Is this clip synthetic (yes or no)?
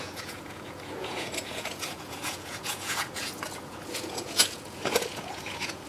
yes